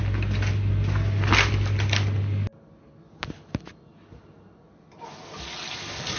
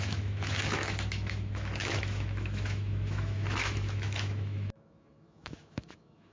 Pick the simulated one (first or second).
second